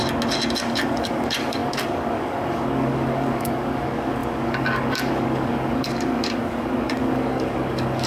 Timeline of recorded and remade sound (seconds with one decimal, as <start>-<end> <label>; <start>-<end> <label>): 0.0-0.6 recorded; 0.6-8.1 remade